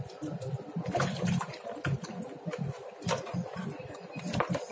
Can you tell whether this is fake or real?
real